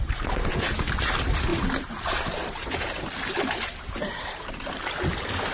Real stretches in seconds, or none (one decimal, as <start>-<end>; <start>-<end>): 0.0-1.5; 4.8-5.5